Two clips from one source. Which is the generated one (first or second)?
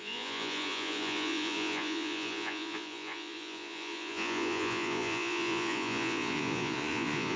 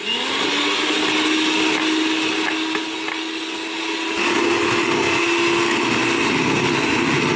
first